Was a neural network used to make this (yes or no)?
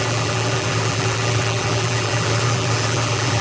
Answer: yes